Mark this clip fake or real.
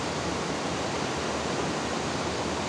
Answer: real